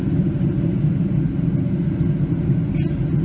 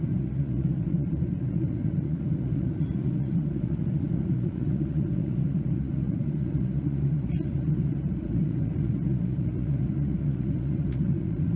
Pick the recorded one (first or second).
first